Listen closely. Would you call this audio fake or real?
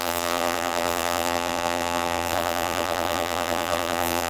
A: fake